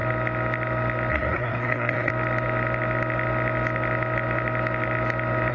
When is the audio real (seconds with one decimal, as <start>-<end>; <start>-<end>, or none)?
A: 0.0-1.1; 2.1-5.5

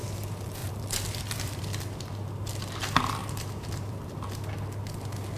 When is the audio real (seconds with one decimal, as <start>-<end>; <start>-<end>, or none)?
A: 0.0-0.6; 1.8-3.2; 4.1-5.4

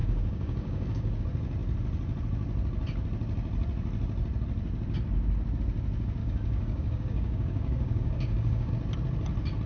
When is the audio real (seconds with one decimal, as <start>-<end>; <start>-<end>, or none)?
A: 1.2-6.2; 8.7-9.7

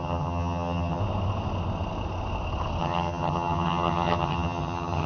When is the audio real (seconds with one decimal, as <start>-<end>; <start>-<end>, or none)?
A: 1.0-2.8

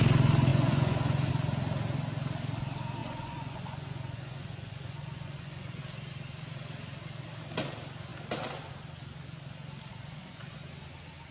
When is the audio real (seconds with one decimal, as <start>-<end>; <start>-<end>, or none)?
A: 0.0-0.5; 1.3-3.0; 5.8-9.9; 10.6-11.3

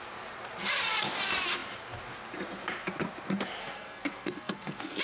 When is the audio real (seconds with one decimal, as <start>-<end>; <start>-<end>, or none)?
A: 0.0-3.6

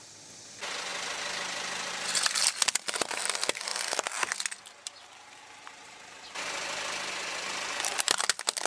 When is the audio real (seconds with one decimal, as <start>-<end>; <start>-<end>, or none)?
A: 0.0-8.7